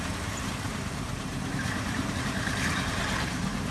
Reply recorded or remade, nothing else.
remade